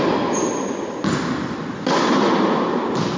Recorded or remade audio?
recorded